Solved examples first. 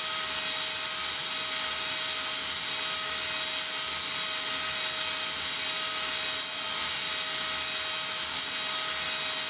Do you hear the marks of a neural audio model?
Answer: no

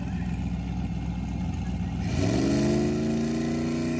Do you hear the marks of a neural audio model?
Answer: no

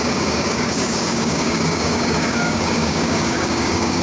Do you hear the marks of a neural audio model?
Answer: yes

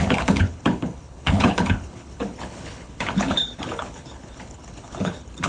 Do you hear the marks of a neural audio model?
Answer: yes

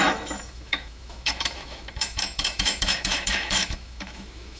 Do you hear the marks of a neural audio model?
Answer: yes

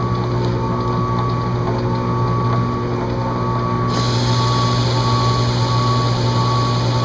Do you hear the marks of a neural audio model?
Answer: no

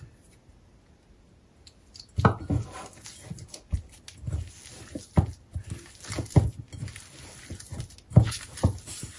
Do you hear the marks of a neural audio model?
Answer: no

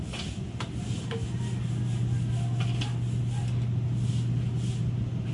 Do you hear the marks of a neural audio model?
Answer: no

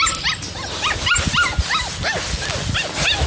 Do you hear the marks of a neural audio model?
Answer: no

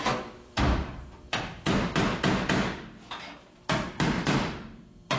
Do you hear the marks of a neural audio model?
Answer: yes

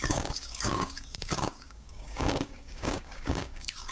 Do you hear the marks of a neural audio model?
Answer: yes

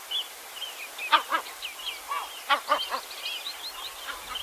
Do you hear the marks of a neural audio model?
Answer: no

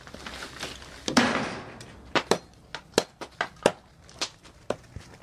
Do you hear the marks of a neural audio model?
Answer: no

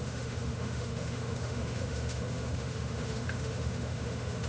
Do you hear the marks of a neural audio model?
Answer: yes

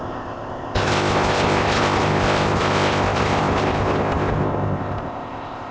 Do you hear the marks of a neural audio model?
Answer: yes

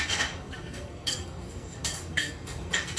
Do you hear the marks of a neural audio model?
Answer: yes